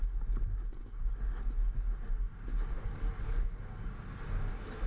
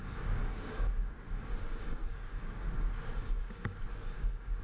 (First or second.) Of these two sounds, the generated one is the second